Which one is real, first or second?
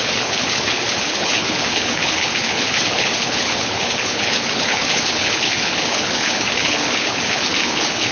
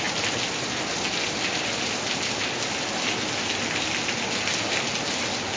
second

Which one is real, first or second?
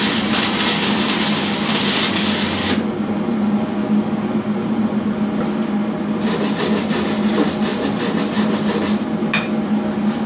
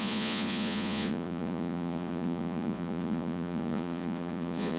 first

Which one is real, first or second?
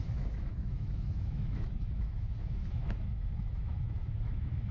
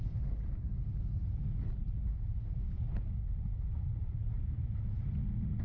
second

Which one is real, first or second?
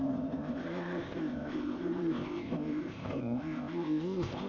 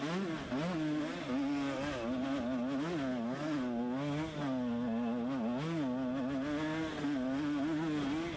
second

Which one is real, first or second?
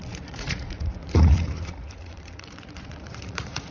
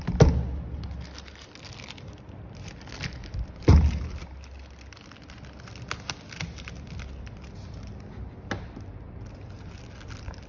second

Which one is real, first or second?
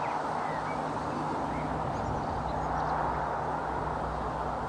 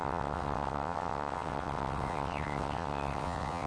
first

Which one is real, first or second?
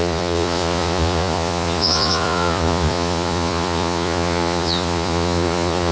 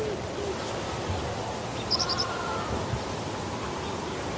second